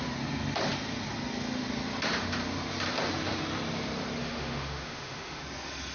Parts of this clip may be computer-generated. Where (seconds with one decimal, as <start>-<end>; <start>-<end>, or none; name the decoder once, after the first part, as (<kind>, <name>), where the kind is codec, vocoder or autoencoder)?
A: 4.2-5.4 (autoencoder, DAC-VAE)